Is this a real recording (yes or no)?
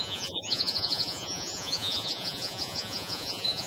no